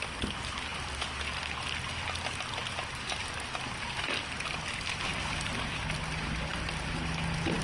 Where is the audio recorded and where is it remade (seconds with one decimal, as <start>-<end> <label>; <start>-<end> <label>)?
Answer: 0.0-7.6 recorded